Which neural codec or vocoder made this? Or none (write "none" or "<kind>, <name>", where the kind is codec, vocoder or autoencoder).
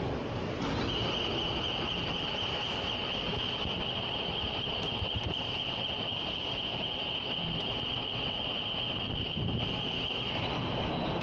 none